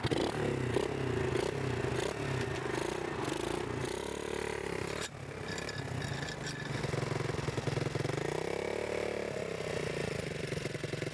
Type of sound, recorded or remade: recorded